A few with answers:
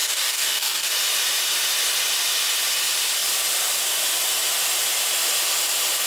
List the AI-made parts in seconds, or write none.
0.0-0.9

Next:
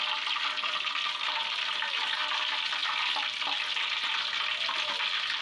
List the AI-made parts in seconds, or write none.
none